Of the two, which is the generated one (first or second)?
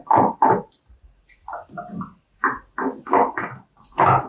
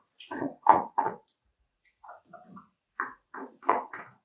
second